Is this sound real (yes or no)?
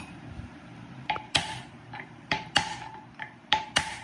no